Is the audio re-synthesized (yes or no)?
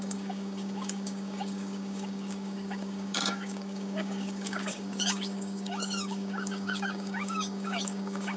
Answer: yes